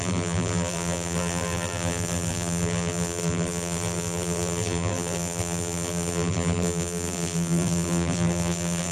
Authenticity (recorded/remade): remade